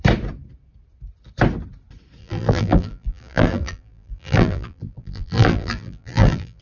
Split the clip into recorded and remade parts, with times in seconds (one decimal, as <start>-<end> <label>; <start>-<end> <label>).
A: 0.0-2.2 recorded; 2.2-6.6 remade